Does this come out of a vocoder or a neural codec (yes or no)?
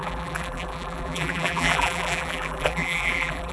yes